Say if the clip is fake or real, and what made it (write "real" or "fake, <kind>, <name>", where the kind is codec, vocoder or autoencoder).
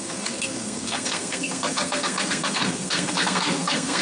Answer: fake, codec, SNAC